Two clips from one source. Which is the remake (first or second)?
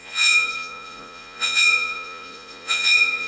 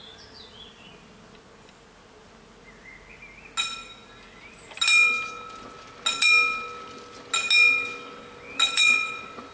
first